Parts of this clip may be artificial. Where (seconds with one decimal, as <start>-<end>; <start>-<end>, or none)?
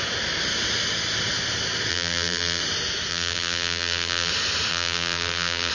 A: 1.9-2.6; 3.1-4.3; 4.7-5.7